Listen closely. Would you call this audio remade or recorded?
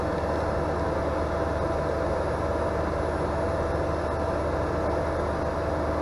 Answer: recorded